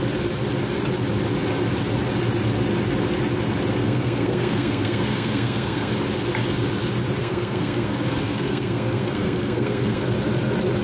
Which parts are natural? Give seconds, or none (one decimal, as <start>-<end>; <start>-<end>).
0.0-3.8; 5.9-7.2; 10.0-10.8